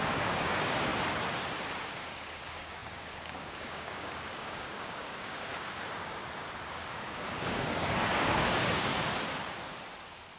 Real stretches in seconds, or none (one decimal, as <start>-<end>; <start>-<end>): 0.9-1.8; 6.2-6.7; 8.9-10.4